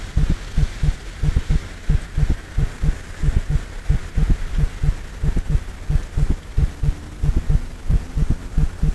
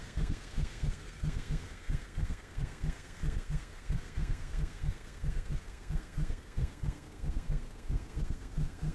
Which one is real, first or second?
first